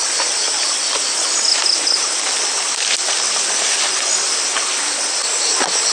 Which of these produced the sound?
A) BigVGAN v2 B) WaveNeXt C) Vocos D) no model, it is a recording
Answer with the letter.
D